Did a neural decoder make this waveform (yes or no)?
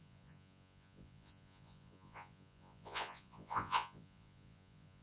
yes